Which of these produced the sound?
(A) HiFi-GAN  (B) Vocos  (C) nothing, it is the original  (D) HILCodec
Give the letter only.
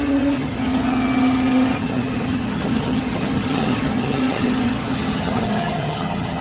A